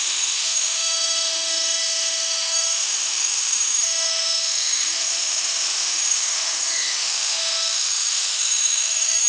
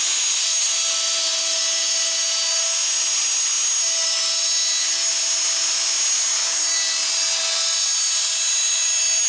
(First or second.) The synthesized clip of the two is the first